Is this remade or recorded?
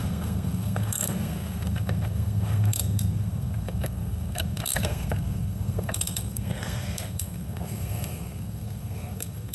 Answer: remade